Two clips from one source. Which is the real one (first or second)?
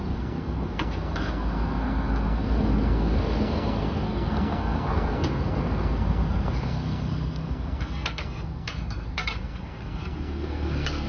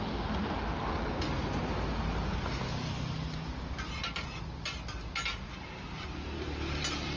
second